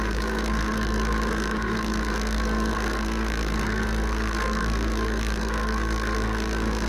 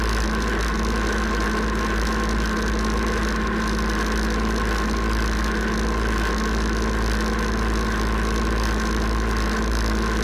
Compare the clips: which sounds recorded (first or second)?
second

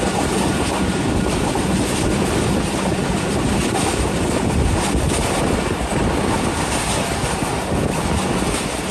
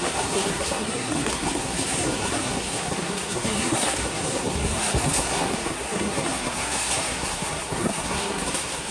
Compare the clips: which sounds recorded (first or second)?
first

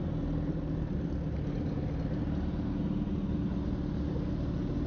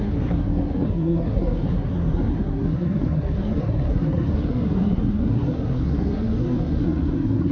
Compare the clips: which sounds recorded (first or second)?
first